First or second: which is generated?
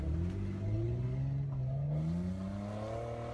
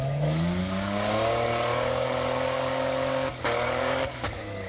second